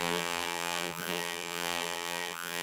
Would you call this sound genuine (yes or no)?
no